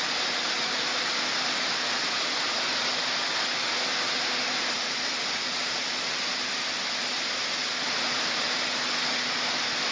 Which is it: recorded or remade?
recorded